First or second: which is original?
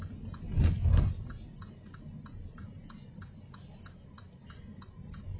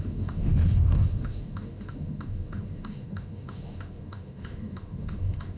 first